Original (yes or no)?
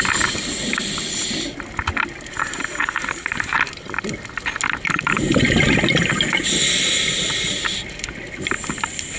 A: yes